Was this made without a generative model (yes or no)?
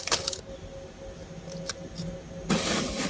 yes